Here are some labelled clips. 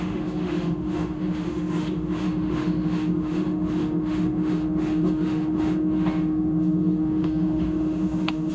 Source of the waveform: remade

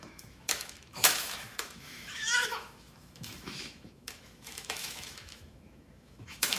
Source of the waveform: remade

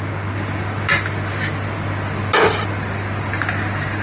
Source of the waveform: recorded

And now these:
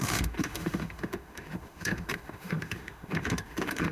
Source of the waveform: remade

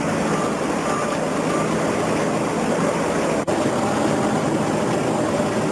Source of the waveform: recorded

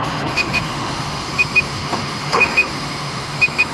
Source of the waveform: remade